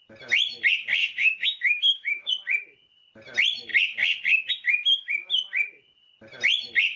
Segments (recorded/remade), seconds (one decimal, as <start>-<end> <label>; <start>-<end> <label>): 0.0-1.0 recorded; 1.0-2.3 remade; 2.3-7.0 recorded